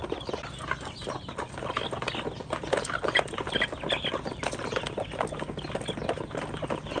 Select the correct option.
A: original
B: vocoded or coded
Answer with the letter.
A